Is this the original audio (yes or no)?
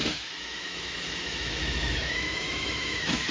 no